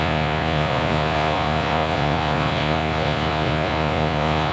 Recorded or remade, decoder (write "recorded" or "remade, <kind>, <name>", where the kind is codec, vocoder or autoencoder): remade, vocoder, Vocos